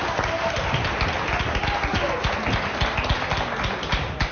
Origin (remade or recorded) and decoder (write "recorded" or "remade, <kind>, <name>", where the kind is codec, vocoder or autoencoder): recorded